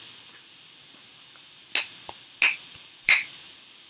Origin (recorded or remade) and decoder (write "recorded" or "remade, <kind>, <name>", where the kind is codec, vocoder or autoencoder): recorded